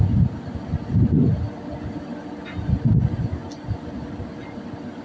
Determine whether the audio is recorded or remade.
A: recorded